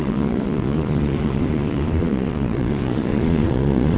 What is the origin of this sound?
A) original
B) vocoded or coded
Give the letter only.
B